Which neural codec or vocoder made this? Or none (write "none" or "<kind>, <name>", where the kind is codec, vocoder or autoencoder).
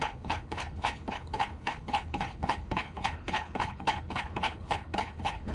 codec, HILCodec